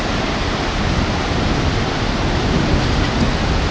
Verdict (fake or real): real